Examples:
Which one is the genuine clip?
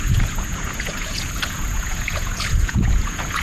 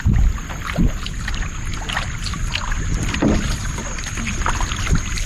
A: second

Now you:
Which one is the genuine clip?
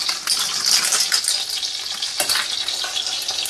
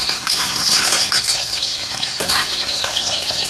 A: first